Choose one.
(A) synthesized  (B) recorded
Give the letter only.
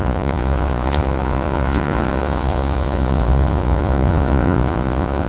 A